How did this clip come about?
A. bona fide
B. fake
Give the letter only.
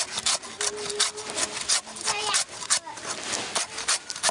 A